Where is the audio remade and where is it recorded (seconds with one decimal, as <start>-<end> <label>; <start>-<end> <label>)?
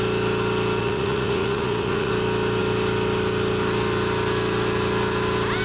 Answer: 0.0-0.8 recorded; 0.8-2.1 remade; 2.1-5.6 recorded